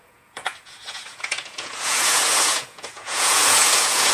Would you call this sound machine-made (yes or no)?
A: yes